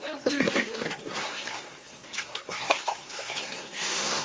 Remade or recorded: remade